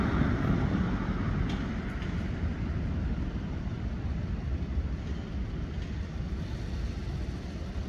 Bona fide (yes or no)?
yes